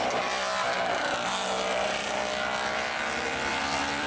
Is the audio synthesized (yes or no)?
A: no